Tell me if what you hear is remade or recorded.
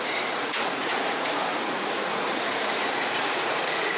remade